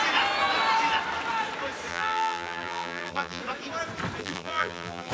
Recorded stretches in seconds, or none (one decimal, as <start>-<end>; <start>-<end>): 0.0-1.9; 3.4-4.2